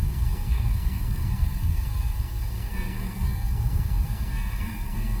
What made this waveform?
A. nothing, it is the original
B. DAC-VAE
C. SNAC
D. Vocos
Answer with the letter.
C